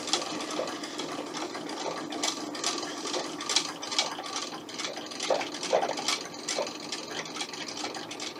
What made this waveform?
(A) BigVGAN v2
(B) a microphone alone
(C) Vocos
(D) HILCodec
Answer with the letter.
B